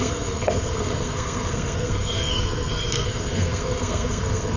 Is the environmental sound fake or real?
fake